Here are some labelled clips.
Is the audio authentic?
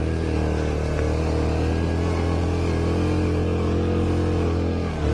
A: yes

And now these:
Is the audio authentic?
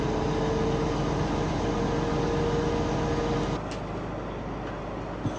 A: yes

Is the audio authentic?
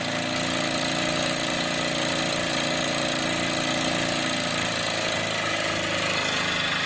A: yes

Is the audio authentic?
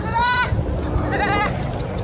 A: yes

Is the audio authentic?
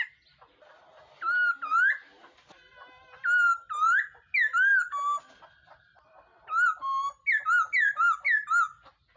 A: yes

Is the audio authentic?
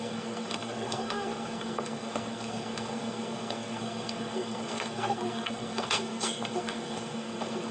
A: no